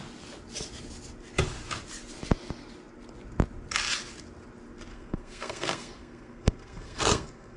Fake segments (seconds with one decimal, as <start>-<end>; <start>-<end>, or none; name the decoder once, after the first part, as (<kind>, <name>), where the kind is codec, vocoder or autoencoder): 4.9-7.6 (codec, SNAC)